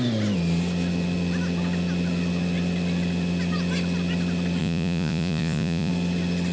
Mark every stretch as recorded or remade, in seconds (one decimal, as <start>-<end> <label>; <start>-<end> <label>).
0.0-4.6 recorded; 4.6-5.9 remade; 5.9-6.5 recorded